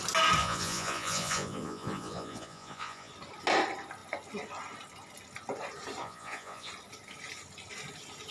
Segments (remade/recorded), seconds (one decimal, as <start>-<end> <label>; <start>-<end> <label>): 0.0-0.4 recorded; 0.4-3.1 remade; 3.1-6.0 recorded; 6.0-6.7 remade; 6.7-8.3 recorded